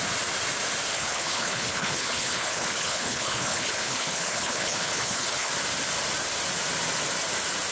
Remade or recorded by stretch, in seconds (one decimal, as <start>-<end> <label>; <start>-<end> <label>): 0.0-0.9 recorded; 0.9-5.5 remade; 5.5-7.7 recorded